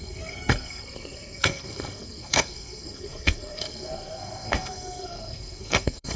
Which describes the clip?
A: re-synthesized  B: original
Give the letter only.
A